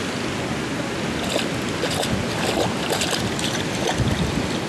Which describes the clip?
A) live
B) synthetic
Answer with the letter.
A